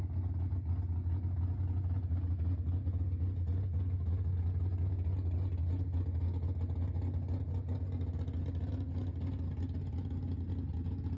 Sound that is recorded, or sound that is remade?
recorded